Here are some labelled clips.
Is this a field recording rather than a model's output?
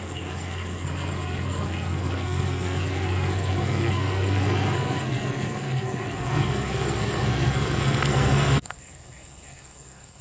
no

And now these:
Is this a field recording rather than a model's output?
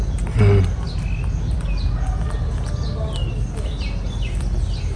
yes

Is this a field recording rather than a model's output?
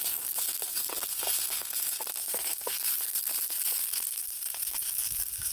no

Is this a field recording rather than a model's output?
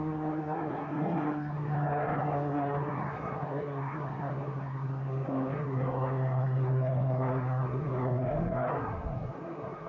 no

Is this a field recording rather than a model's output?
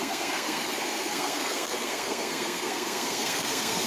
no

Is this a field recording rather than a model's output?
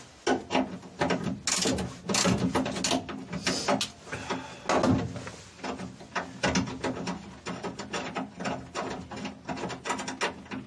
yes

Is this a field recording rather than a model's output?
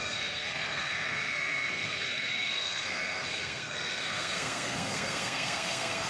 no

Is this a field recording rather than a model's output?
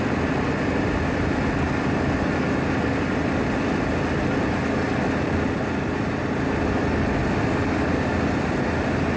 yes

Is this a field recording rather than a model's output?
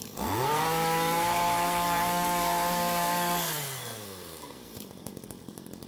no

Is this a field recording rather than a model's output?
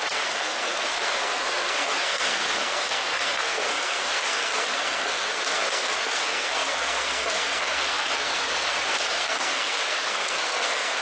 no